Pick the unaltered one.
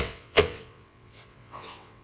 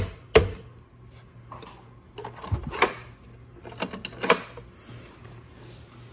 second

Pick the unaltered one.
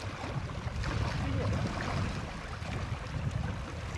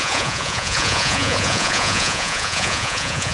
first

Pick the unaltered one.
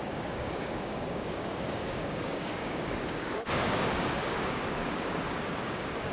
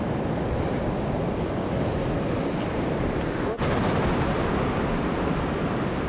second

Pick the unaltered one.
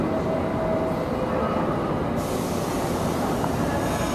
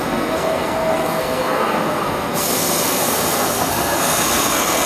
first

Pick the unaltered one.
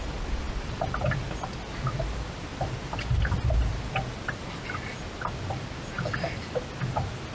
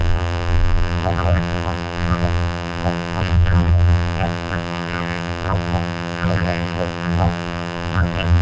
first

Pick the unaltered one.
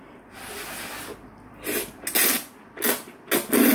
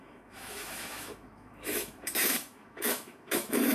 first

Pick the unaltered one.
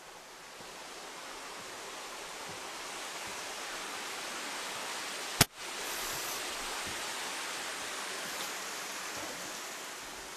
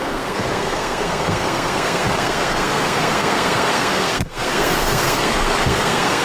first